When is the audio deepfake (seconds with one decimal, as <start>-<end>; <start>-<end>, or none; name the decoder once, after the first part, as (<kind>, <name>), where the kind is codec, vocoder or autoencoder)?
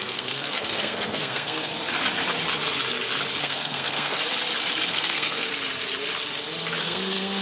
0.0-1.7 (codec, SNAC); 3.4-4.2; 4.9-5.5; 6.8-7.4